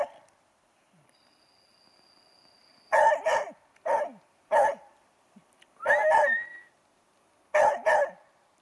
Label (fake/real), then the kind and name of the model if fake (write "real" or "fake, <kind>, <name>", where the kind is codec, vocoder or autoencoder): real